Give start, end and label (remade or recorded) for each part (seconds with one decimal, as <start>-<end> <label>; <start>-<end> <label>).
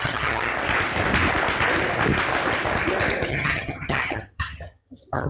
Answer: 0.0-0.5 remade; 0.5-3.3 recorded; 3.3-5.3 remade